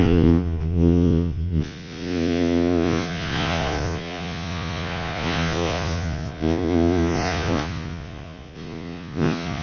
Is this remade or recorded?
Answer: remade